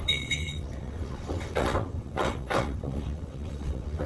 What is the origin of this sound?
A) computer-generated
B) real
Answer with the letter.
A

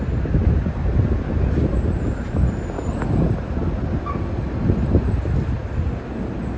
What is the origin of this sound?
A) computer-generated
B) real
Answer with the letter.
B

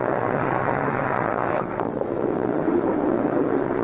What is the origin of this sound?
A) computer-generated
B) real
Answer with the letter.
A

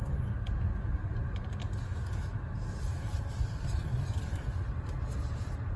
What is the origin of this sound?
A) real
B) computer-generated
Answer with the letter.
A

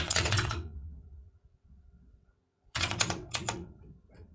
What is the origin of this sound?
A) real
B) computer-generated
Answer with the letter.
B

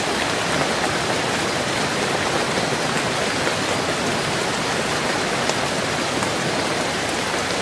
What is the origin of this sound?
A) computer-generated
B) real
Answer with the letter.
B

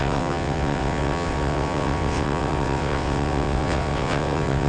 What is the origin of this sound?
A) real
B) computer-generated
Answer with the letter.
B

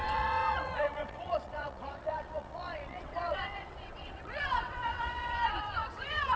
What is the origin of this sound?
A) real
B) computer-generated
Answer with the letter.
B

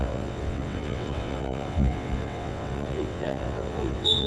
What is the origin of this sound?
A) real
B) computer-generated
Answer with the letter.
B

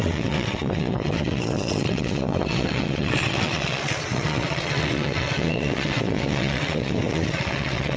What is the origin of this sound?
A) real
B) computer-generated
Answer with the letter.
B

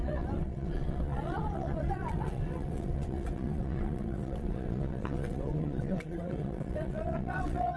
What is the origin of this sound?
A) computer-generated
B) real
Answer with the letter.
A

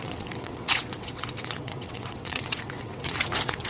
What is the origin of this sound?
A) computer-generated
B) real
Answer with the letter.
A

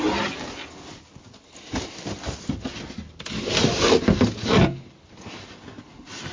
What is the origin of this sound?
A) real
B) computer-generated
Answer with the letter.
A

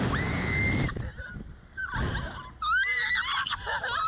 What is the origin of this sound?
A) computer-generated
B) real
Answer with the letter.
B